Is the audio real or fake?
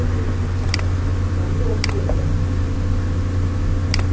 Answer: real